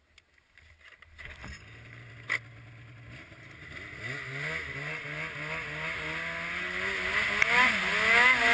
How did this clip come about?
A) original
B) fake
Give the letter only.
A